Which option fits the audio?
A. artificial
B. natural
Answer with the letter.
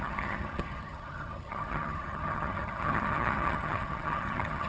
A